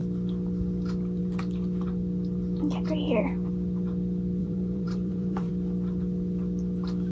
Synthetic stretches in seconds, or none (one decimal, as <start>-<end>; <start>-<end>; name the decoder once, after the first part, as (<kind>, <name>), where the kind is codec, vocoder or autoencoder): 4.4-5.5 (vocoder, BigVGAN v2)